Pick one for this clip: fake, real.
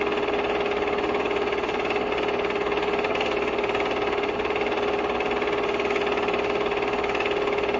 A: real